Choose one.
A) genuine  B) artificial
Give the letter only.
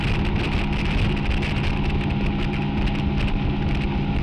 A